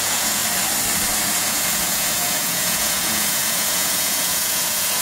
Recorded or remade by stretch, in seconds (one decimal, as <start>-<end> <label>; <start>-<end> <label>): 0.0-0.4 remade; 0.4-1.3 recorded; 1.3-5.0 remade